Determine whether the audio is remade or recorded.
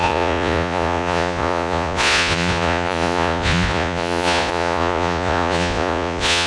remade